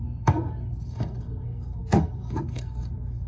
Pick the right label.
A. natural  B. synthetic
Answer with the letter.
B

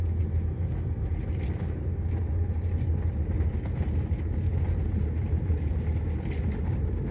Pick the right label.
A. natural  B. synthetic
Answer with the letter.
A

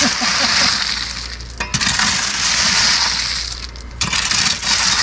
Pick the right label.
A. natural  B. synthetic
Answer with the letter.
A